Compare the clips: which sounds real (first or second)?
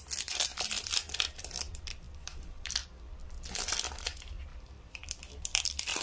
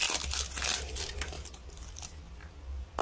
second